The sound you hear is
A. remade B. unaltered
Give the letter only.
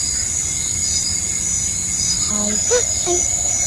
B